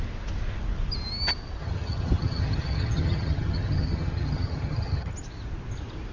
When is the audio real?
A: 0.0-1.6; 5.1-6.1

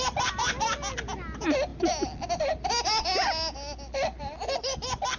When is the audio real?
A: 0.0-5.2

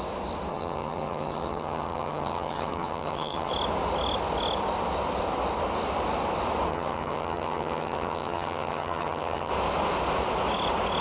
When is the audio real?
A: 0.0-0.5; 3.5-6.7; 9.5-11.0

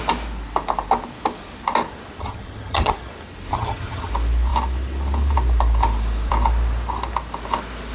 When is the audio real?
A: 0.0-2.2; 3.1-3.5; 4.1-7.9